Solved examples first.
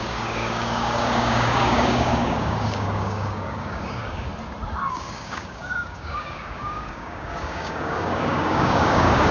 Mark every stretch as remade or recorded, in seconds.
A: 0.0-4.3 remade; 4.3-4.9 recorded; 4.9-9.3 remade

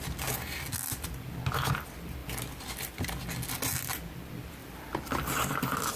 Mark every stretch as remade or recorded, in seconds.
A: 0.0-2.2 recorded; 2.2-3.2 remade; 3.2-4.6 recorded; 4.6-5.5 remade; 5.5-6.0 recorded

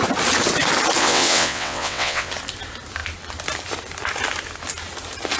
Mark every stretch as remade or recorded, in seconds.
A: 0.0-1.0 recorded; 1.0-2.3 remade; 2.3-5.4 recorded

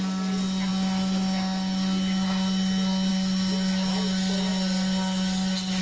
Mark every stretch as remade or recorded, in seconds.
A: 0.0-5.8 recorded

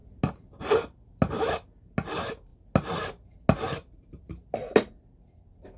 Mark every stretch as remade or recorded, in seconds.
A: 0.0-5.8 recorded